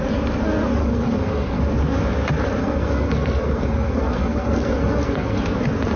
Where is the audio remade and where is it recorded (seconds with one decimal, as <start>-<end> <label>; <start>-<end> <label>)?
0.0-0.8 recorded; 0.8-1.6 remade; 1.6-2.6 recorded; 2.6-5.4 remade; 5.4-6.0 recorded